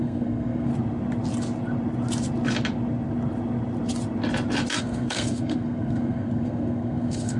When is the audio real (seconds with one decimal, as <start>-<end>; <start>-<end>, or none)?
0.7-4.8